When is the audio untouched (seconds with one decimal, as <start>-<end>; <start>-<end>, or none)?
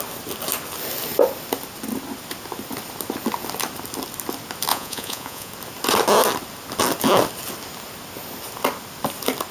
0.0-4.7; 5.5-9.5